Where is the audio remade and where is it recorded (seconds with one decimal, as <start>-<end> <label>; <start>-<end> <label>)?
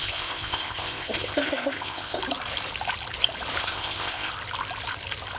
0.0-2.2 remade; 2.2-3.6 recorded; 3.6-4.3 remade; 4.3-5.4 recorded